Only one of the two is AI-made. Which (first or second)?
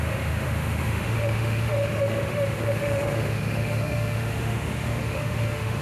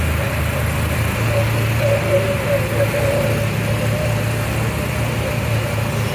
first